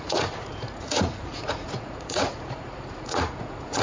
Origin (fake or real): fake